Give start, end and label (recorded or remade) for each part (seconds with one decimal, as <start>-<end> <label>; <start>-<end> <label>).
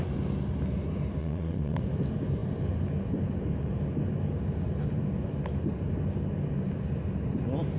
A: 0.0-1.2 recorded; 1.2-1.8 remade; 1.8-7.8 recorded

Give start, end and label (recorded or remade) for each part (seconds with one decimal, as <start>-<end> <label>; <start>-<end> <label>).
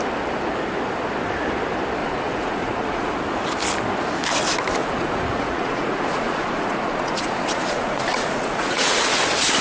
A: 0.0-2.0 recorded; 2.0-3.1 remade; 3.1-4.8 recorded; 4.8-9.2 remade; 9.2-9.6 recorded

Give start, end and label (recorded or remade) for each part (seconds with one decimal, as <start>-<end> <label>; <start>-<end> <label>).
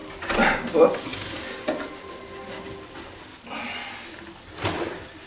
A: 0.0-5.3 recorded